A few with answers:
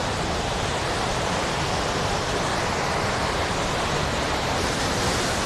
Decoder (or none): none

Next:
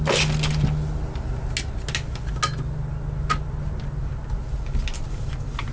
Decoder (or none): none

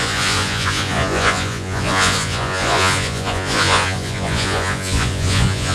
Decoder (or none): vocoder, Vocos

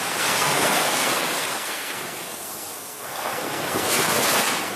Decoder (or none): codec, SNAC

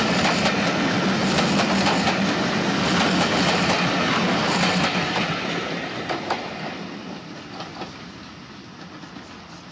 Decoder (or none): none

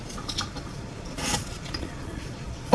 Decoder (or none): vocoder, Vocos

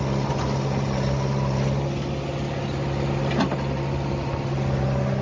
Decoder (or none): none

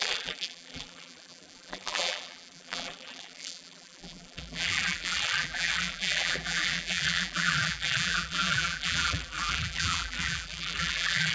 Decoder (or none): vocoder, BigVGAN v2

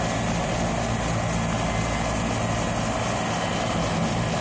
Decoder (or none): none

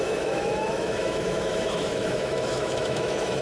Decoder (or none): autoencoder, DAC-VAE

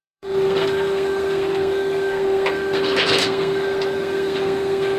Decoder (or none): codec, SNAC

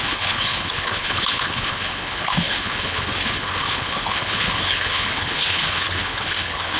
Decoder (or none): codec, HILCodec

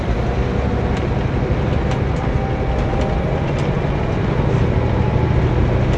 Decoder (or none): none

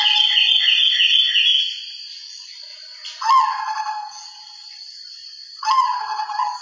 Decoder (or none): none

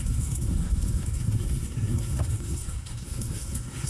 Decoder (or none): codec, SNAC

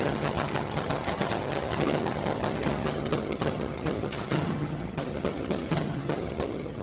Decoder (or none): vocoder, HiFi-GAN